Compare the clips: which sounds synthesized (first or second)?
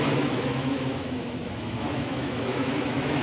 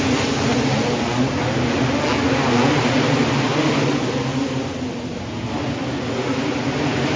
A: first